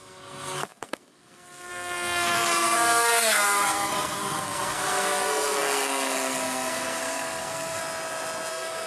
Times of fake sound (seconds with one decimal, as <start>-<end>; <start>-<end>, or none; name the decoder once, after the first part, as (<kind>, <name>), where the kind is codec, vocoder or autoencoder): 0.0-7.8 (codec, SNAC); 8.5-8.9